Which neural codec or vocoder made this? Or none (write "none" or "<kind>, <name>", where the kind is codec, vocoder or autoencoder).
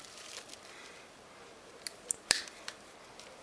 vocoder, BigVGAN v2